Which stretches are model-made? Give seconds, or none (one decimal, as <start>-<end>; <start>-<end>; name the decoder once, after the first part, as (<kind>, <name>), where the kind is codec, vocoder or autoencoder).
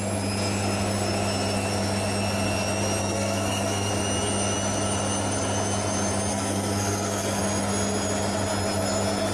3.0-3.9 (codec, SNAC); 6.3-7.4